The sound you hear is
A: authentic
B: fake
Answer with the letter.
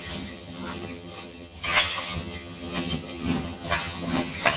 B